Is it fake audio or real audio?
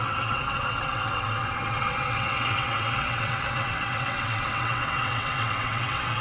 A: fake